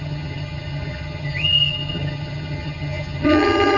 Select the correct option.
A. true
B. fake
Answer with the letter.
B